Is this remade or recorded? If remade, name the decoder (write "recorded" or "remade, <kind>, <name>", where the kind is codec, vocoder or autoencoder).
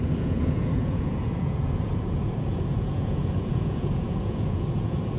remade, vocoder, Vocos